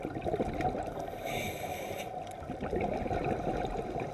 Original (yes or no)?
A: yes